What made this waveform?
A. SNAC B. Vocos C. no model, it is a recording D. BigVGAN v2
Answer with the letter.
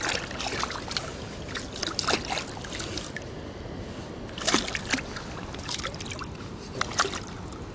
C